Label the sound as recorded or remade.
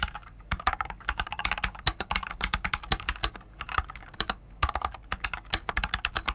remade